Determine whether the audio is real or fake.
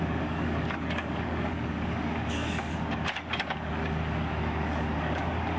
fake